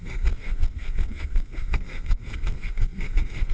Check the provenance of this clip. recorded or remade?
remade